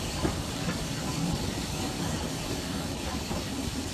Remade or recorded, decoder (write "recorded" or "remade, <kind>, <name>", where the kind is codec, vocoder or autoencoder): remade, codec, DAC